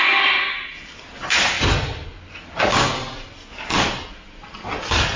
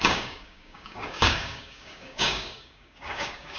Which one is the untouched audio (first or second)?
first